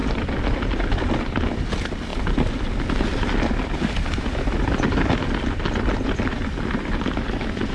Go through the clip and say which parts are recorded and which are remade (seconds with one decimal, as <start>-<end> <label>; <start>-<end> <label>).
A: 0.0-7.7 recorded